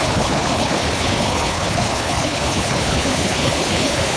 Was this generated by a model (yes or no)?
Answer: yes